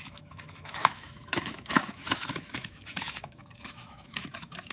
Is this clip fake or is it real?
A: fake